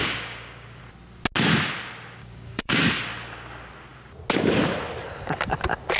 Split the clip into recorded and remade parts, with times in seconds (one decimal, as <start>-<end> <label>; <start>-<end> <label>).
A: 0.0-0.8 remade; 0.8-2.2 recorded; 2.2-2.9 remade; 2.9-6.0 recorded